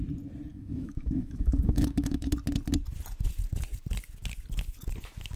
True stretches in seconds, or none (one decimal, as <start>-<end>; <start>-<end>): 0.0-0.5; 2.3-5.4